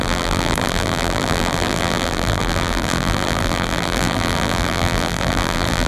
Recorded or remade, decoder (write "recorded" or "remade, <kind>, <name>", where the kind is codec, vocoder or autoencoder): remade, vocoder, BigVGAN v2